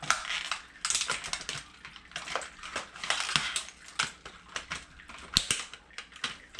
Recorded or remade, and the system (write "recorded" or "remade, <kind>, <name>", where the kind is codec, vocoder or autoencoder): recorded